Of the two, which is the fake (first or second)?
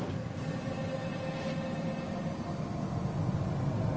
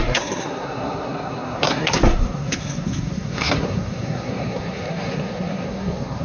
second